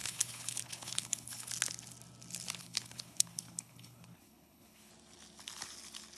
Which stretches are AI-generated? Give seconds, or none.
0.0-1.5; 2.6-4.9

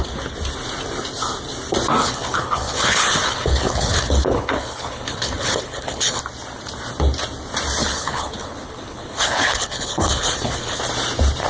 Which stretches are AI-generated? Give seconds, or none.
2.0-6.2; 7.8-10.8